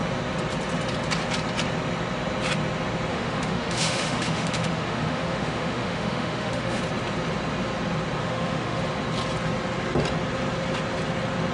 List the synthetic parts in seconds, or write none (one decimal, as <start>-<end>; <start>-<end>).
3.1-6.8; 8.2-8.8